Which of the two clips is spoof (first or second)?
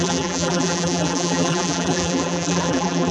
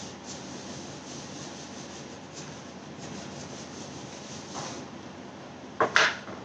first